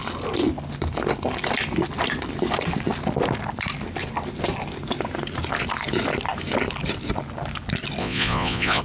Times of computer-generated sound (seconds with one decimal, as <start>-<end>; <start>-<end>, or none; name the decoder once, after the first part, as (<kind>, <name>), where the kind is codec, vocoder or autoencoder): 8.0-8.8 (vocoder, Vocos)

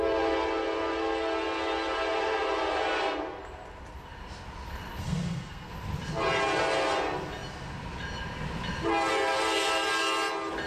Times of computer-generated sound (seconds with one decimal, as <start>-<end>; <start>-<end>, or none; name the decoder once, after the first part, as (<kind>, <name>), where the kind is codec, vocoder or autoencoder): 5.0-5.7 (codec, SNAC)